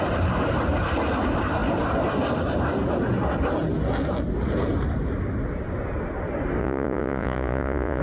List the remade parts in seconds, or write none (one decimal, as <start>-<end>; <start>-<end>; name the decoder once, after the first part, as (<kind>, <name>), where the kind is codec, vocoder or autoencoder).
6.6-8.0 (vocoder, Vocos)